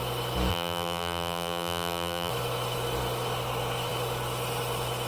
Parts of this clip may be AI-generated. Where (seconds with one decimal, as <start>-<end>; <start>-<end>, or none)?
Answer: 0.5-2.3